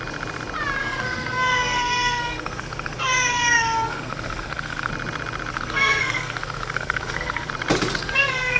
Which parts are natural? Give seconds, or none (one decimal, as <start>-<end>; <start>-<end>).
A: 0.0-0.8; 4.9-5.5; 7.5-8.0